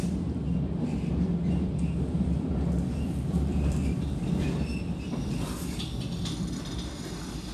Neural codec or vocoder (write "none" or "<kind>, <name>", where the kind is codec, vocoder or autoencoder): vocoder, BigVGAN v2